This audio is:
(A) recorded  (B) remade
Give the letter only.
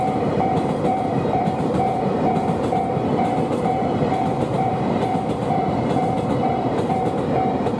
B